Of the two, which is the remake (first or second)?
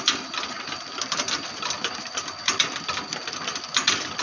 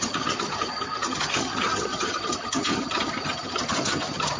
second